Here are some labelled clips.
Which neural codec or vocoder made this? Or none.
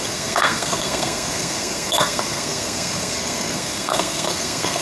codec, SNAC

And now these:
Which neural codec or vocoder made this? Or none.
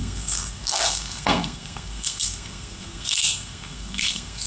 codec, SNAC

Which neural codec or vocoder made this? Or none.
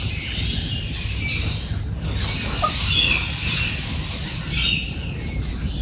none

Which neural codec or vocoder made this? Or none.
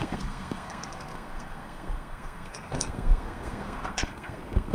codec, SNAC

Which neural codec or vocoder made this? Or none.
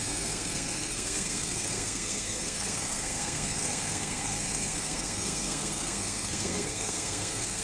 codec, SNAC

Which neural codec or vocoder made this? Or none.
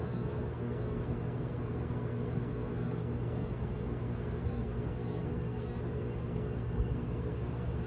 codec, SNAC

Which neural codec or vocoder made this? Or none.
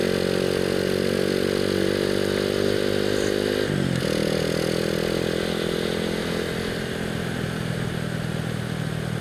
none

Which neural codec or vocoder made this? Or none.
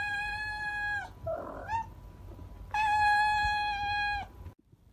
none